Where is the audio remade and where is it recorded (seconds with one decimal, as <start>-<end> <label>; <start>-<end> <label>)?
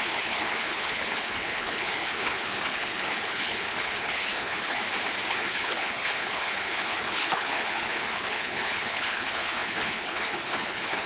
0.0-4.8 remade; 4.8-5.3 recorded; 5.3-11.1 remade